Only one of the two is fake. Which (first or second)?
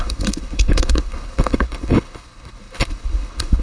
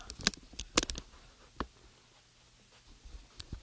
first